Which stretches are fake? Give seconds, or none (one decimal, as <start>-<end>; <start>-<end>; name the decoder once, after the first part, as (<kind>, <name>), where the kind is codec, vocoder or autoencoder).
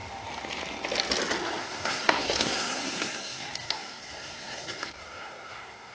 1.6-5.9 (codec, SNAC)